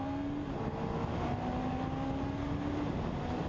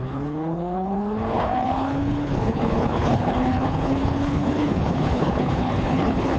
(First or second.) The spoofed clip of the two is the second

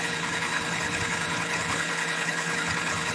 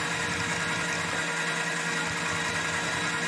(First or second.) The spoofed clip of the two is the first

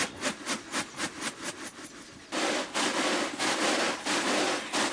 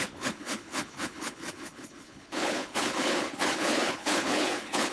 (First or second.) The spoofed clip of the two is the second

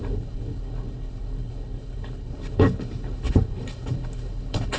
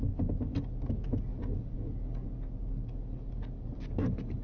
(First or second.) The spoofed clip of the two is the first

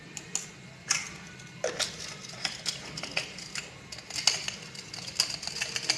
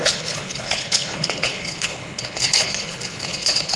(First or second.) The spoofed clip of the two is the second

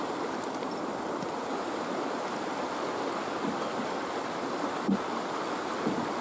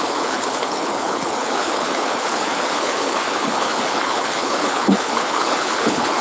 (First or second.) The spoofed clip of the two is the second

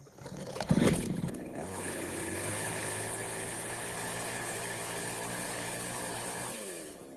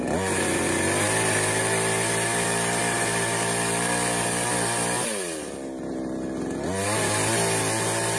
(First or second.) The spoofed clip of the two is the first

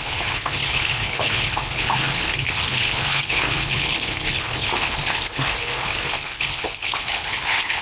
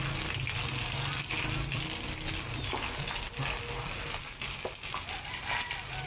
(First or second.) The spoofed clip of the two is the first